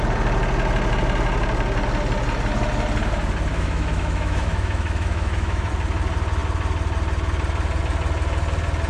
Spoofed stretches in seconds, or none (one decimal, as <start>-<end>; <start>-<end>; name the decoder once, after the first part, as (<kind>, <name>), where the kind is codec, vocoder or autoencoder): 3.5-5.7 (autoencoder, DAC-VAE)